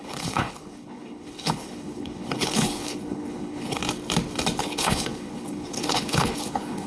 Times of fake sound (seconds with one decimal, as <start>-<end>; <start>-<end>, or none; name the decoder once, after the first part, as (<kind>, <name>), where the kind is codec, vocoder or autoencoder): 0.0-3.8 (codec, HILCodec); 4.6-6.9